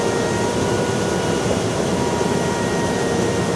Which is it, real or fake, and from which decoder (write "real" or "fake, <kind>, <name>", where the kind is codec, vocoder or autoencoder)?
real